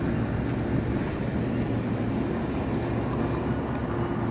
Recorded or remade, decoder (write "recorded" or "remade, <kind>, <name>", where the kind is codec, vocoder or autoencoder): recorded